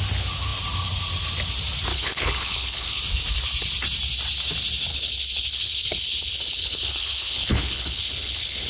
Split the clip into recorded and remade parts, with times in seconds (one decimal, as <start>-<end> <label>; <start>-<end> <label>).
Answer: 0.0-1.9 recorded; 1.9-3.0 remade; 3.0-4.9 recorded; 4.9-8.7 remade